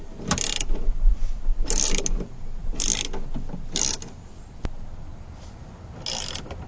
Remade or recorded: recorded